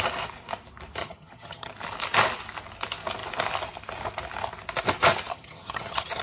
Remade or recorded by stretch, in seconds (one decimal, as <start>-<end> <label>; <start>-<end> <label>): 0.0-1.0 recorded; 1.0-1.7 remade; 1.7-5.3 recorded; 5.3-6.2 remade